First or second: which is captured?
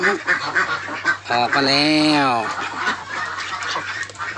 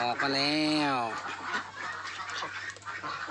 second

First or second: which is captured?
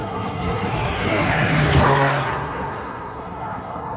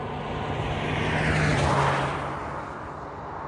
second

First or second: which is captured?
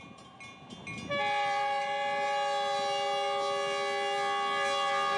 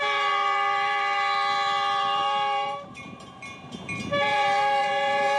first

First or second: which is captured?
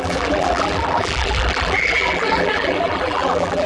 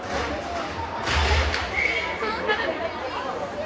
second